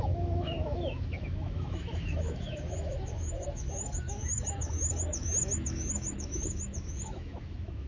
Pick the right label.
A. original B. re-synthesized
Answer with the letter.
B